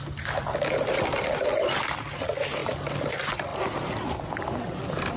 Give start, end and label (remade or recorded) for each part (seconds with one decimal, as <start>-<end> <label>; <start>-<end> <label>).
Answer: 0.0-5.2 recorded